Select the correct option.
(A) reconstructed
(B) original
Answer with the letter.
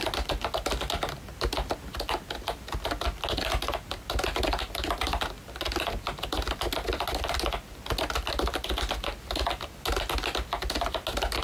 B